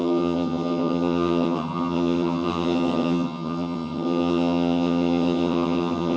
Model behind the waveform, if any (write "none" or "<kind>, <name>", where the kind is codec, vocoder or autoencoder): vocoder, HiFi-GAN